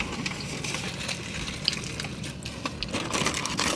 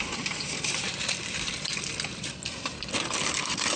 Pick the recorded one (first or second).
first